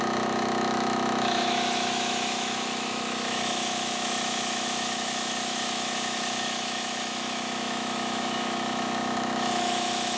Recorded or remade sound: remade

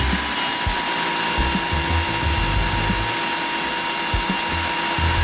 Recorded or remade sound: recorded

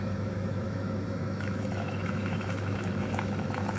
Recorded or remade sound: remade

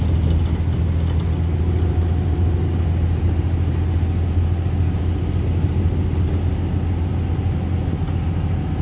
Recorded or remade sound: recorded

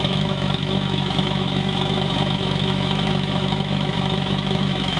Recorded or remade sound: remade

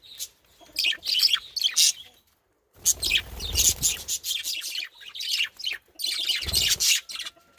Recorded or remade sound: recorded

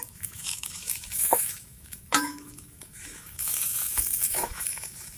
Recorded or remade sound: remade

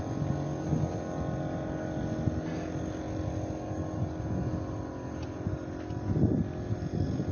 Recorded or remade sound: recorded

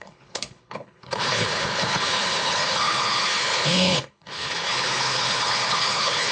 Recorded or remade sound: remade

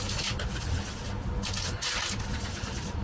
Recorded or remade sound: recorded